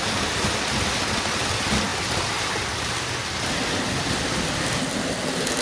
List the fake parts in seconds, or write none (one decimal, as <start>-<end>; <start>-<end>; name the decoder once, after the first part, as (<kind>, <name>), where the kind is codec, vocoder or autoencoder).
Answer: none